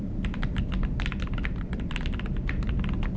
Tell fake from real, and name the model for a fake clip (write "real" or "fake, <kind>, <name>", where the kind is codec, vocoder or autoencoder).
real